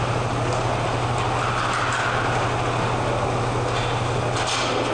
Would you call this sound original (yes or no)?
yes